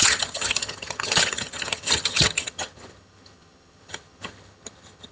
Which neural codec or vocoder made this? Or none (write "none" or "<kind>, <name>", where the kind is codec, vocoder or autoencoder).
vocoder, HiFi-GAN